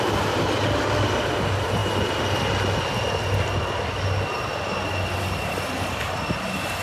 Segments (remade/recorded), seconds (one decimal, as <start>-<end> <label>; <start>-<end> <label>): 0.0-6.8 recorded